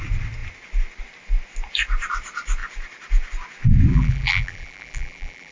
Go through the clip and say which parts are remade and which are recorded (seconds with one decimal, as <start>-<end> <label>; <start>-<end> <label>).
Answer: 0.0-3.9 recorded; 3.9-5.5 remade